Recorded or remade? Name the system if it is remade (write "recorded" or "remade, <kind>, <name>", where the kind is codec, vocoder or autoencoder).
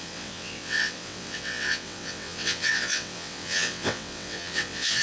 remade, vocoder, WaveNeXt